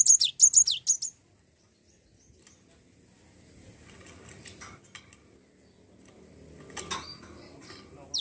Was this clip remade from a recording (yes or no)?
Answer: no